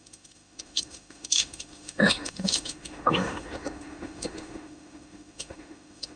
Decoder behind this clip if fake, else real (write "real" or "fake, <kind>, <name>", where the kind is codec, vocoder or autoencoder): fake, autoencoder, DAC-VAE